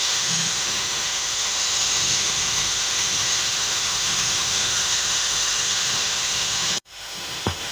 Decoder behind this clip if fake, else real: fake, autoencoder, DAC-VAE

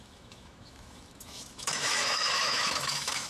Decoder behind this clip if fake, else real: fake, autoencoder, DAC-VAE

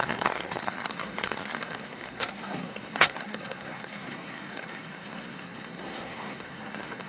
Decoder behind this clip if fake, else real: fake, codec, SNAC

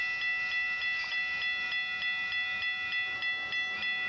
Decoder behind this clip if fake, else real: real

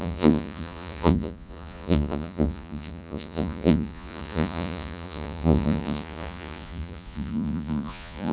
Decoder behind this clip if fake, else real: fake, vocoder, Vocos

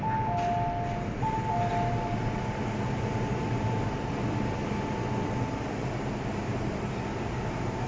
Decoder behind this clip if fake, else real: real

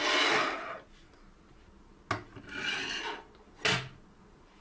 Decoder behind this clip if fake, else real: real